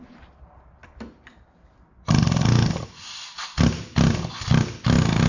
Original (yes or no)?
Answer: yes